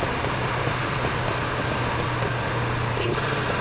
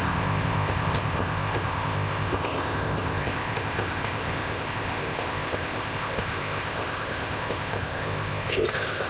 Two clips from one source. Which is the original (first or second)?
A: first